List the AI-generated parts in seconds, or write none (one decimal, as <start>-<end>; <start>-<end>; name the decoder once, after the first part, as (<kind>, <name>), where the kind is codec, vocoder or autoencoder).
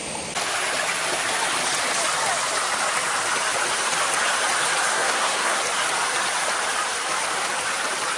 4.9-5.6 (codec, SNAC)